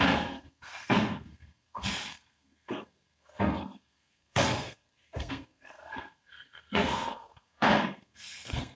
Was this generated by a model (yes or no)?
yes